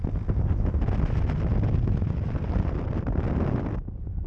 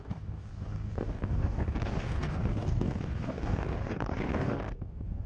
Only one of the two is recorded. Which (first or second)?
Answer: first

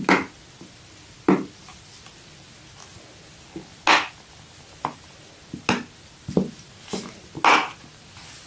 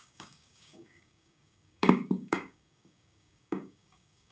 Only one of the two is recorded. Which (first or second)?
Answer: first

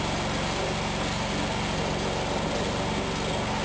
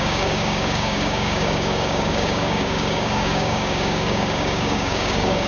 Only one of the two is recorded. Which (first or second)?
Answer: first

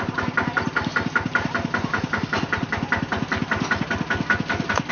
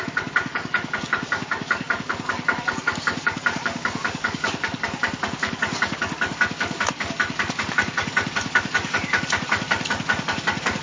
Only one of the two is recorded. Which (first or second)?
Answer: first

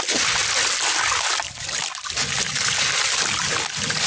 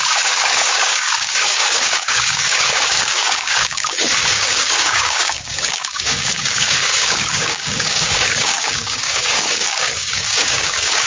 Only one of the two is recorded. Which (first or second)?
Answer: first